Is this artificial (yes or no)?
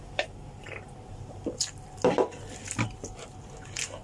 yes